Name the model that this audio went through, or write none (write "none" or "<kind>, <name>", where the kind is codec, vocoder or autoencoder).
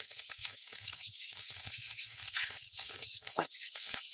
codec, SNAC